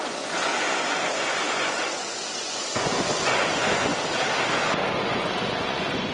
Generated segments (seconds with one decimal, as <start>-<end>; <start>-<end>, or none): 0.0-3.9; 5.1-6.1